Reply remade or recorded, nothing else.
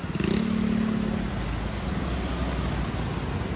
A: recorded